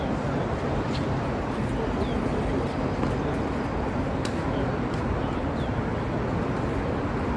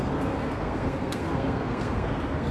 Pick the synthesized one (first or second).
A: second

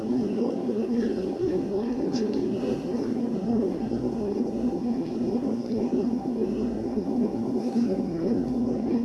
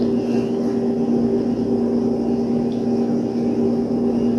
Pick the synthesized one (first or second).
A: first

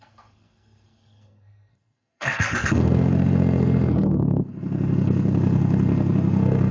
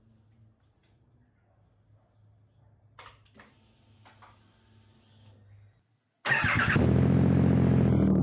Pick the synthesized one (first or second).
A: first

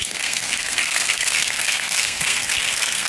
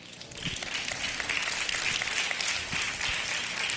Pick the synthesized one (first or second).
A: first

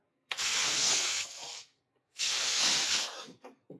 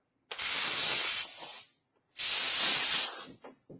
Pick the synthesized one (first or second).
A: first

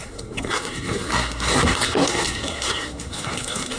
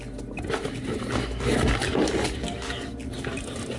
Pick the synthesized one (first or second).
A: first